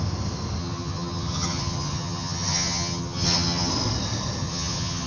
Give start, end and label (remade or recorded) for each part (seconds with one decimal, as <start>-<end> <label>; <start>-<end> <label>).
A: 0.0-0.6 recorded; 0.6-3.7 remade; 3.7-4.4 recorded; 4.4-5.1 remade